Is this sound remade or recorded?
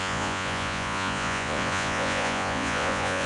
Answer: remade